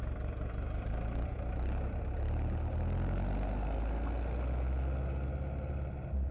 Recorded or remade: recorded